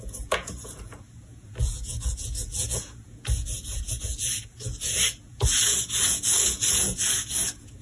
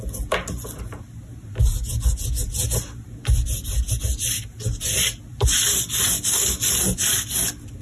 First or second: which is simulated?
first